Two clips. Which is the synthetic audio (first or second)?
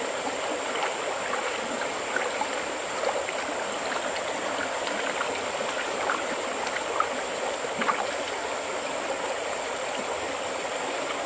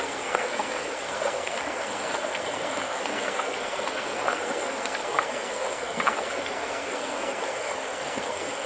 second